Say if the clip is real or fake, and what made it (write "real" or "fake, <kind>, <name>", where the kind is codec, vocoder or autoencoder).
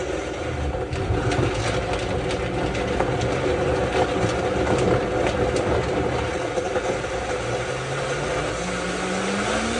real